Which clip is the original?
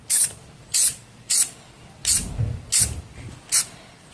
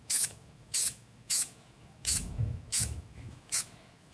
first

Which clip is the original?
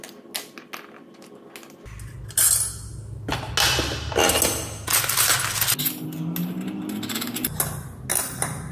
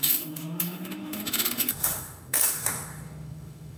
first